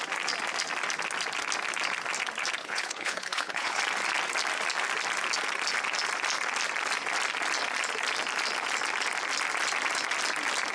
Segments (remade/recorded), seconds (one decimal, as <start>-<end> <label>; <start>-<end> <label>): 0.0-2.6 recorded; 2.6-3.8 remade; 3.8-10.7 recorded